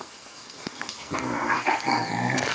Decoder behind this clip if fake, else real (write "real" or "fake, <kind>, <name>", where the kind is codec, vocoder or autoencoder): fake, codec, SNAC